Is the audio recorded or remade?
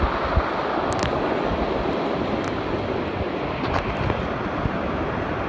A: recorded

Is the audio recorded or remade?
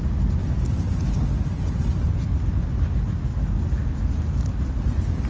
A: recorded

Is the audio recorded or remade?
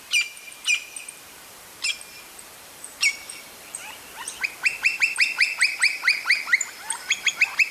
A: remade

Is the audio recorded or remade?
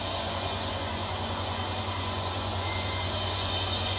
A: remade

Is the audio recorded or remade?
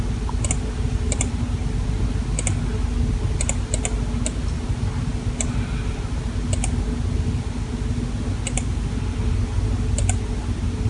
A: recorded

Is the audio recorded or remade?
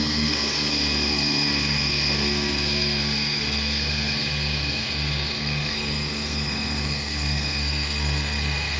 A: remade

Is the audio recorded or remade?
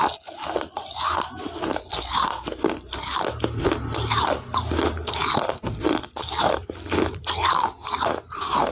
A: recorded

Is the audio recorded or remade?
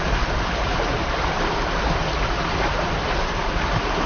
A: recorded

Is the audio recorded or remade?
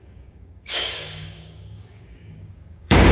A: remade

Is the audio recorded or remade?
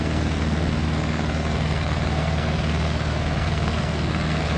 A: remade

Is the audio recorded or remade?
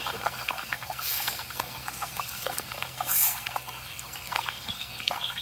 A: remade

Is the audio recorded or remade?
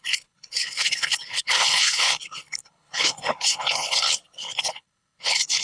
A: remade